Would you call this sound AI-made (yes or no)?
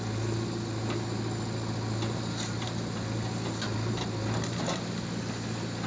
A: no